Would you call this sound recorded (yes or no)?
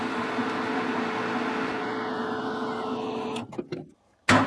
yes